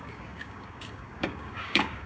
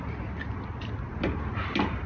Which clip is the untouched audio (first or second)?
second